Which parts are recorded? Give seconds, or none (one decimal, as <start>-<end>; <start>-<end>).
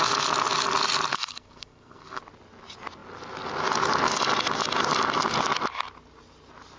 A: 0.0-1.1; 2.2-6.8